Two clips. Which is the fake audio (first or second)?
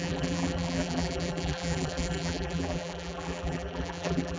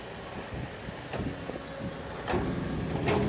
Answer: first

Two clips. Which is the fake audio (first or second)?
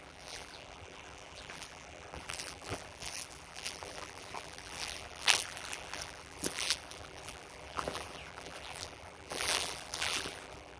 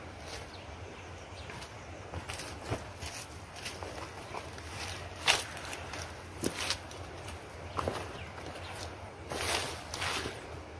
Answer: first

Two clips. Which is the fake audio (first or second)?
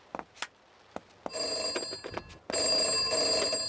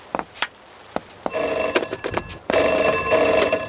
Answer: second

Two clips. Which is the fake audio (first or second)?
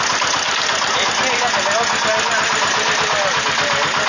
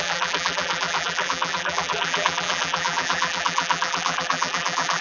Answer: second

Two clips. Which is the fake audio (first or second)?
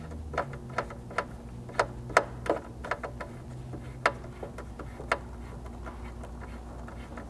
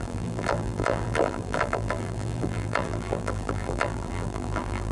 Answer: second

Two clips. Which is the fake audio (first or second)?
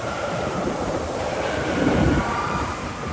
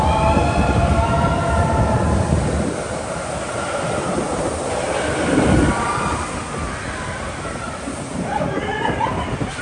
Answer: first